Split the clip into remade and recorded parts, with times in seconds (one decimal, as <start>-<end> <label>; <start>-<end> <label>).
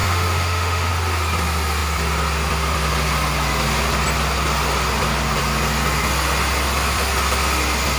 0.0-0.9 remade; 0.9-8.0 recorded